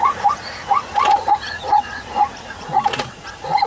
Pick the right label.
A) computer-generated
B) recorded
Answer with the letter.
A